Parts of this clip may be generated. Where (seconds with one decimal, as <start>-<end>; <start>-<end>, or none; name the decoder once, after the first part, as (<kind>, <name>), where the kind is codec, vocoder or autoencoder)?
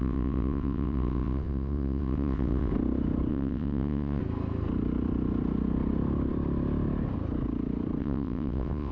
0.0-2.7 (vocoder, WaveNeXt); 3.3-4.2; 8.0-8.9